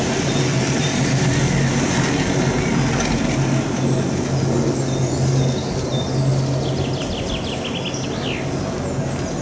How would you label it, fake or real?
real